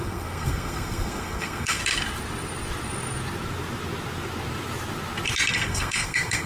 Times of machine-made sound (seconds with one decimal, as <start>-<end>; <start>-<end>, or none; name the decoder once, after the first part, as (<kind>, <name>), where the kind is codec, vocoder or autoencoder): 0.0-1.8 (codec, SNAC); 5.5-6.5